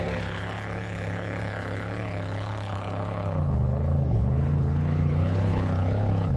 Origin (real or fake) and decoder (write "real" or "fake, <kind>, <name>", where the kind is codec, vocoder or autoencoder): fake, codec, HILCodec